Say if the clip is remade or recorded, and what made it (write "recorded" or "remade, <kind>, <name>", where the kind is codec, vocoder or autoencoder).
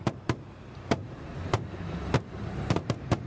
remade, vocoder, BigVGAN v2